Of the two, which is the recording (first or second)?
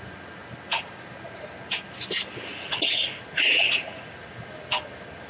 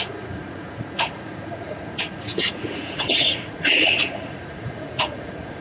first